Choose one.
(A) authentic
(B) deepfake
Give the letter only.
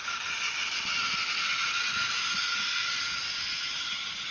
A